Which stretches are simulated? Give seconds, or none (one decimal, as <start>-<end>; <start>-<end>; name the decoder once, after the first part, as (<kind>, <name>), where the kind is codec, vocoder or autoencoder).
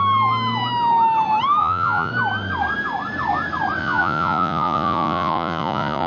1.6-2.1 (vocoder, Vocos); 3.8-6.1